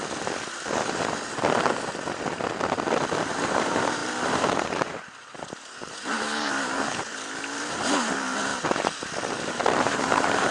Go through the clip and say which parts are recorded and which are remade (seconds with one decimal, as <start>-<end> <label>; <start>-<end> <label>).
0.0-3.2 recorded; 3.2-8.5 remade; 8.5-9.5 recorded; 9.5-10.5 remade